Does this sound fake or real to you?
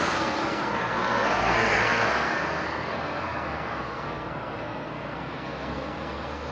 fake